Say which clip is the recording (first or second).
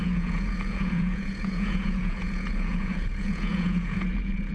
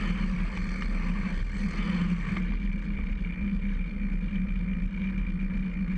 second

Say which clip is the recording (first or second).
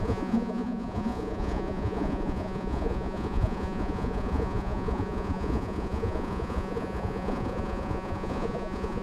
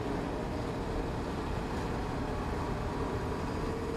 second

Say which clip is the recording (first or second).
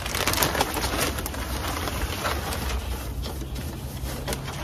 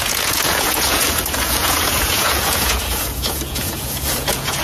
first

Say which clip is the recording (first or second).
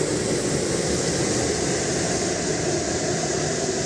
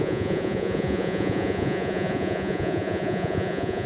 first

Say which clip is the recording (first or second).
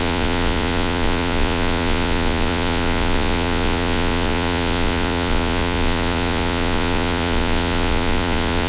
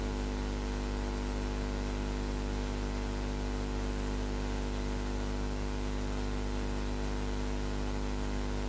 second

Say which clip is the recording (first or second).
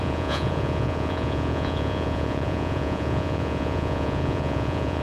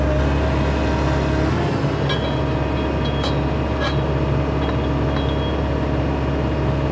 second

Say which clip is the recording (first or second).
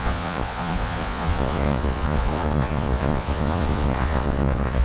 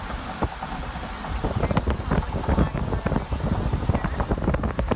second